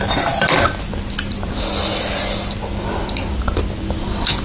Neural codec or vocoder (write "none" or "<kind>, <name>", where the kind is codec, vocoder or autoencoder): none